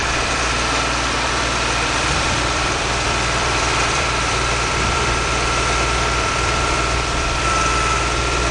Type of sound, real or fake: fake